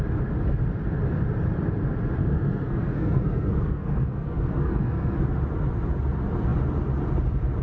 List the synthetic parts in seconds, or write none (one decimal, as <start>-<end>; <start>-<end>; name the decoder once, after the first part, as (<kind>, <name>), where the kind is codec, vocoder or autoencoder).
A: 2.2-5.2 (codec, SNAC)